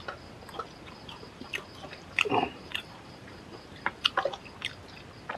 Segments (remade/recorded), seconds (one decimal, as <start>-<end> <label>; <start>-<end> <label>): 0.0-1.0 recorded; 1.0-4.2 remade; 4.2-5.4 recorded